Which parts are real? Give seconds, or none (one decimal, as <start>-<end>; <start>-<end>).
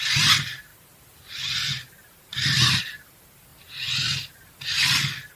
0.0-5.4